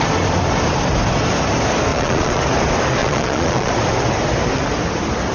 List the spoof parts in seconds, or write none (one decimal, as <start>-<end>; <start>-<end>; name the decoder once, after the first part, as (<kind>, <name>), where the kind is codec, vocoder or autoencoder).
1.9-2.4 (vocoder, Vocos); 3.0-3.7